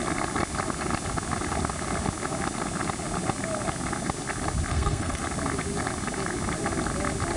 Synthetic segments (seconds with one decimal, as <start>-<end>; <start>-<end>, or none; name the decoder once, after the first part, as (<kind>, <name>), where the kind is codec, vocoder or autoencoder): 4.7-5.2 (codec, SNAC)